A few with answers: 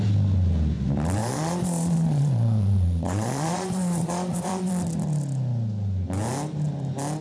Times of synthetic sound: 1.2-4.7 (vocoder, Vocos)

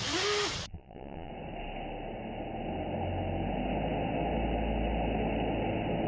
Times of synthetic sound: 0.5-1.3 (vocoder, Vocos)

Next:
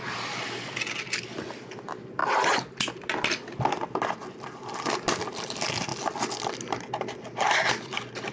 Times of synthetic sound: none

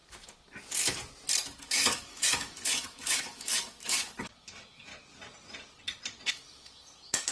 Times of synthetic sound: 1.6-4.9 (autoencoder, DAC-VAE); 6.3-7.3

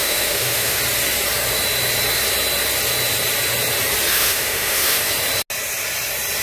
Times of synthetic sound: 0.0-0.8 (autoencoder, DAC-VAE); 4.1-5.1

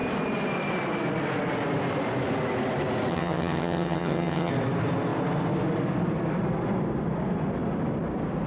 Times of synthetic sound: 3.1-4.5 (vocoder, HiFi-GAN)

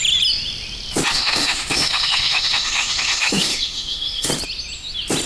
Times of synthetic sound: 1.1-4.3 (autoencoder, DAC-VAE)

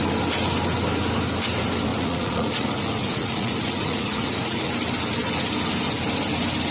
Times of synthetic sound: 1.9-4.7 (vocoder, Vocos)